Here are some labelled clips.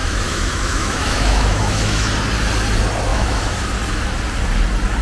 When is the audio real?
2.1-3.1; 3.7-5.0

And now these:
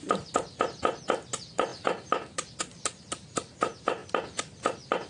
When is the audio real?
0.0-5.1

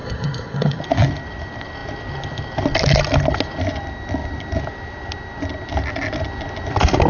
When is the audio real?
0.8-7.1

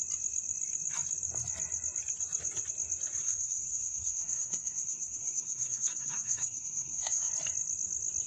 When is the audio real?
0.0-3.2; 7.3-8.3

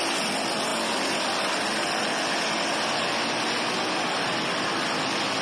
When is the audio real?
0.7-3.9

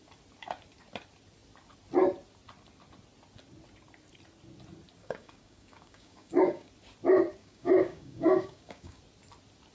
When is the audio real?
0.0-5.0; 6.7-7.4; 9.0-9.7

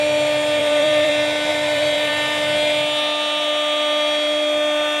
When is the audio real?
0.0-0.6; 1.1-1.5; 2.1-5.0